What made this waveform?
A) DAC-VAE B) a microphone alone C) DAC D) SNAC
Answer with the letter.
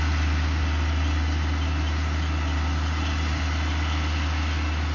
B